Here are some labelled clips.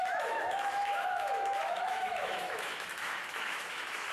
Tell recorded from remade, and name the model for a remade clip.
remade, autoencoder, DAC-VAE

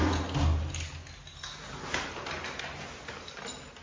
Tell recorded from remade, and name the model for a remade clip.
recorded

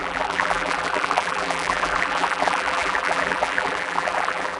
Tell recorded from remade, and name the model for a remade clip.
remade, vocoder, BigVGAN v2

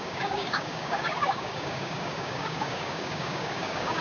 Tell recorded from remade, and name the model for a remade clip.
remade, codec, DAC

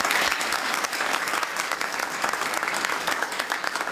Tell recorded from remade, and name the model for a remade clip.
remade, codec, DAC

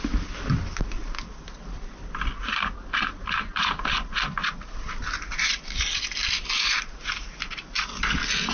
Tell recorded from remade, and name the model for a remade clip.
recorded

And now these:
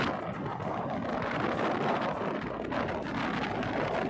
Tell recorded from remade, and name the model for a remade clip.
recorded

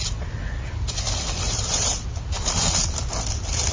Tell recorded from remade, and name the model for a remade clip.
recorded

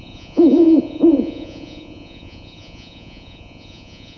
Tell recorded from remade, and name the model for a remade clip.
remade, vocoder, Vocos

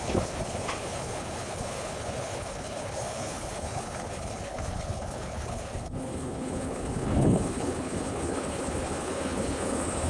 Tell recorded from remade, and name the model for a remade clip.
remade, codec, HILCodec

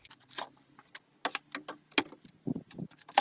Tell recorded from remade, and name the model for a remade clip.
recorded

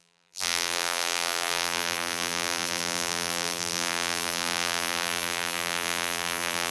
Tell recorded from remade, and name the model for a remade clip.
remade, vocoder, BigVGAN v2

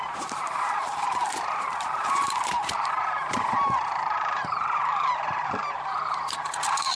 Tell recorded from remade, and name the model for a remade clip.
remade, vocoder, BigVGAN v2